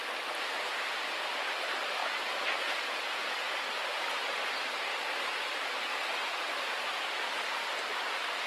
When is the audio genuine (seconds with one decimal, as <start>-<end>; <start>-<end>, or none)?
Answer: 0.0-2.0; 3.6-8.5